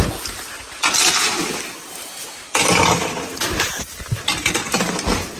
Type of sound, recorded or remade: recorded